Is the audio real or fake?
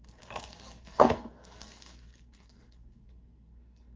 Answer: fake